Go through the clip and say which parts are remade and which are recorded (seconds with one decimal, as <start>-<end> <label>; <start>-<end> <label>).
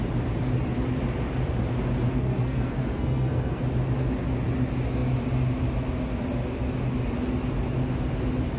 0.0-2.1 recorded; 2.1-3.6 remade; 3.6-8.6 recorded